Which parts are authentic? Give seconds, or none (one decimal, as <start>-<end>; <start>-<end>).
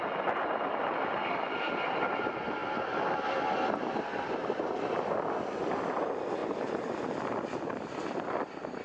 none